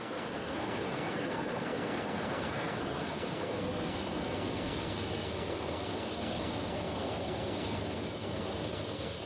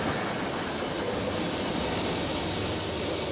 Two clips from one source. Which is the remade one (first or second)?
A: first